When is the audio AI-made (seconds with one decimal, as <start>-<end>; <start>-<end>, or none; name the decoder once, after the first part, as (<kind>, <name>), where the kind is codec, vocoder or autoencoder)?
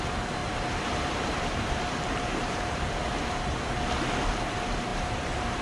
0.4-3.8 (vocoder, BigVGAN v2); 4.9-5.6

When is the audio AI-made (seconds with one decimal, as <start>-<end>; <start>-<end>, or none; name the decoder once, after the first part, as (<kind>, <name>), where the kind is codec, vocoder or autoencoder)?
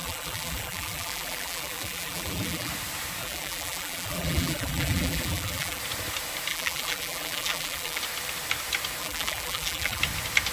0.0-2.7 (vocoder, BigVGAN v2); 3.2-5.8; 6.5-8.0; 9.0-10.0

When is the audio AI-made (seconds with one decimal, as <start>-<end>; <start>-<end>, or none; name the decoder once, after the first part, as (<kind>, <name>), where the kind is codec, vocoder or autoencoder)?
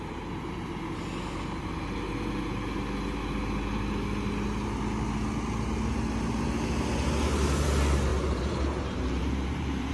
8.1-9.9 (vocoder, BigVGAN v2)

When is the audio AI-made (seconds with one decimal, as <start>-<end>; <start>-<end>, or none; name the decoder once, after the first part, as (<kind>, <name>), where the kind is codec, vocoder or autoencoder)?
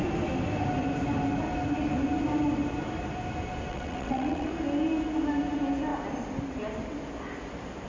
3.7-4.5 (vocoder, WaveNeXt)